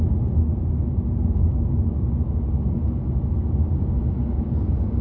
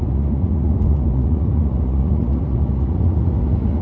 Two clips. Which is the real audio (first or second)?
first